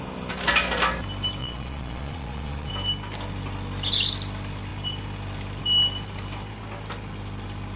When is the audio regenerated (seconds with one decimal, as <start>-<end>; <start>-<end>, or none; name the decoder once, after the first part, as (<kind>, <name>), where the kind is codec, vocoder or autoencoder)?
1.4-2.7 (vocoder, Vocos)